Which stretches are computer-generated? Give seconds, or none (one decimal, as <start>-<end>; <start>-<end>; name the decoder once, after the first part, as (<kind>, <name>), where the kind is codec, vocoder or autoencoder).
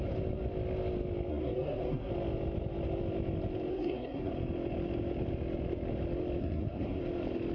1.3-2.1 (codec, SNAC); 3.7-4.3; 6.4-7.0